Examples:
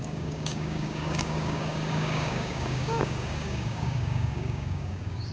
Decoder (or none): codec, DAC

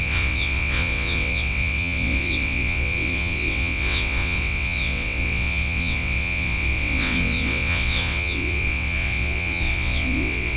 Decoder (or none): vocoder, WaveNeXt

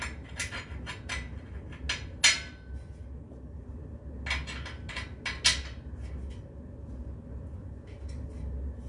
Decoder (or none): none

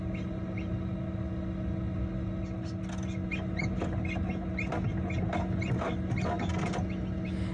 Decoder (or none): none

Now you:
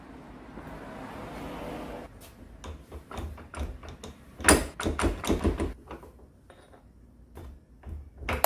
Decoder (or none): none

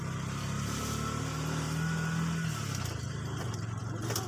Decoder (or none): none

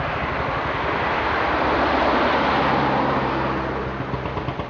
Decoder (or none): none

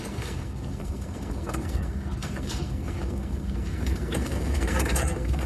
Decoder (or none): codec, SNAC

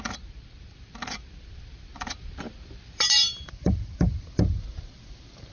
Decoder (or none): vocoder, BigVGAN v2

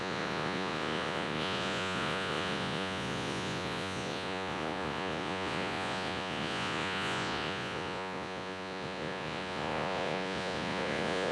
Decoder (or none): vocoder, Vocos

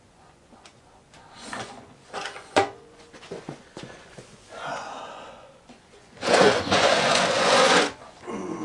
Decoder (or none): vocoder, Vocos